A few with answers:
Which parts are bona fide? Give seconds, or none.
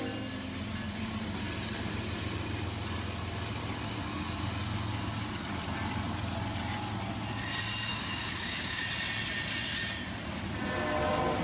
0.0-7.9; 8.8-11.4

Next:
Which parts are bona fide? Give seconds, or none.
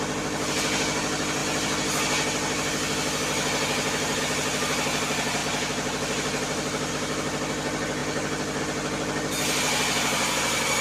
0.0-10.8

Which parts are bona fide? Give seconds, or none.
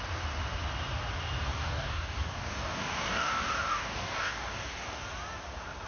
0.0-1.5; 5.0-5.9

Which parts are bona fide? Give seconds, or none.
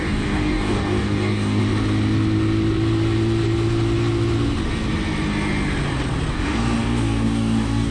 1.6-6.3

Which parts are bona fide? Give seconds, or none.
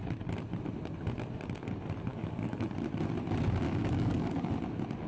0.0-2.1; 2.7-3.8; 4.5-5.1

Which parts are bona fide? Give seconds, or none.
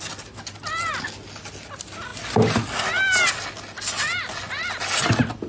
0.0-5.5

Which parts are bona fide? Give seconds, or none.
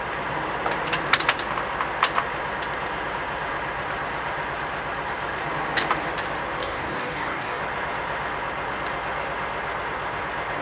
0.0-6.6; 7.6-10.6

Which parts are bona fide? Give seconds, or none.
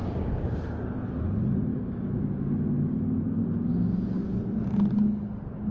0.6-1.7; 2.2-3.7; 4.4-5.7